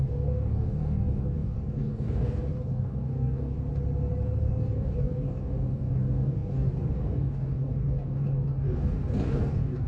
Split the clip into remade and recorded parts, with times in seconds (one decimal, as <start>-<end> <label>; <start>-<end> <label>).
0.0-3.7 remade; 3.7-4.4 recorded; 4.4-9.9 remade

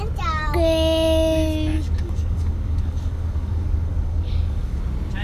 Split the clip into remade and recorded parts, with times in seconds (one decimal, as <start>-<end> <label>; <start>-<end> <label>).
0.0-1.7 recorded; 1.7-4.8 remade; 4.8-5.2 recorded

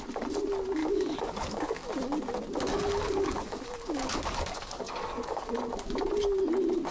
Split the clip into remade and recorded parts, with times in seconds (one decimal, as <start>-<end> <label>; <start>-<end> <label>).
0.0-0.8 recorded; 0.8-1.8 remade; 1.8-2.7 recorded; 2.7-5.5 remade; 5.5-6.9 recorded

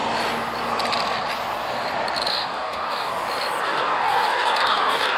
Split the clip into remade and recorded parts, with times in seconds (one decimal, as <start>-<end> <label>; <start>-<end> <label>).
0.0-2.3 recorded; 2.3-3.1 remade; 3.1-3.6 recorded; 3.6-5.2 remade

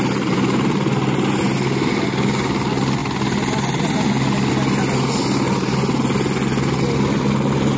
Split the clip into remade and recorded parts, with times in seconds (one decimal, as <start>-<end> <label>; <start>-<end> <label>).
0.0-7.8 recorded

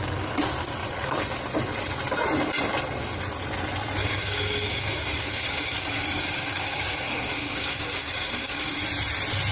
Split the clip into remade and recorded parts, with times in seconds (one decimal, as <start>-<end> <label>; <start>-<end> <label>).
0.0-4.0 recorded; 4.0-8.8 remade; 8.8-9.5 recorded